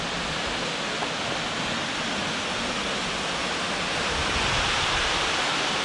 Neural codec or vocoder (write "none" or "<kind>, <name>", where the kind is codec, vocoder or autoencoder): none